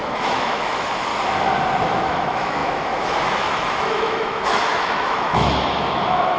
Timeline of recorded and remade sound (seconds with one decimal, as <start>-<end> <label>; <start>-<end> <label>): 0.0-1.1 remade; 1.1-1.8 recorded; 1.8-6.4 remade